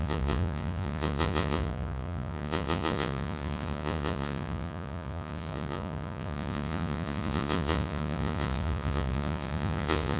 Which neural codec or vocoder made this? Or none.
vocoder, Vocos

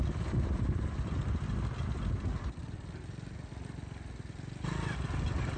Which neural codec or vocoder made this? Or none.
none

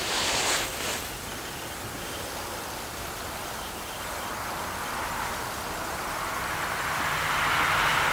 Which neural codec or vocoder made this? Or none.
none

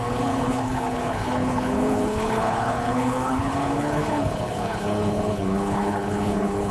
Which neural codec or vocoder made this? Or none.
codec, HILCodec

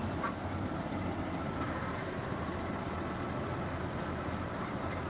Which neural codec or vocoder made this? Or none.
none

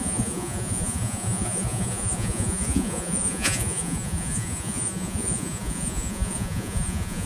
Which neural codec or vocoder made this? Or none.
vocoder, Vocos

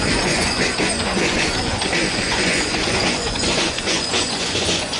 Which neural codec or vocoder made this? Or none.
vocoder, Vocos